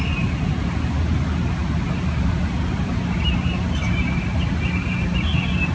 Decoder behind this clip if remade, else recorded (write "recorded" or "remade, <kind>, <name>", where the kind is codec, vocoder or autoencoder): recorded